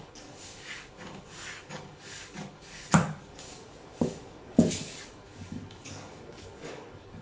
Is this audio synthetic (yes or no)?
yes